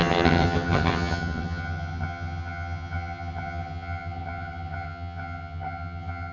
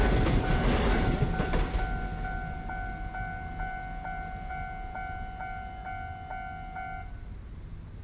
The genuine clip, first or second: second